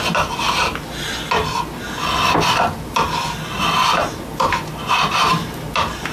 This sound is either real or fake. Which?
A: real